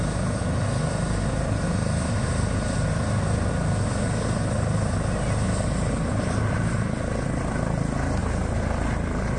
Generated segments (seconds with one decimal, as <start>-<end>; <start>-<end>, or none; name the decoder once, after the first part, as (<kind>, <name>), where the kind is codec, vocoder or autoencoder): none